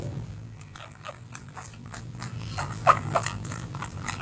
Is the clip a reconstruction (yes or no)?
yes